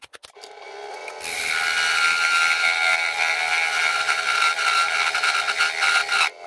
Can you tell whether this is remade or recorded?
recorded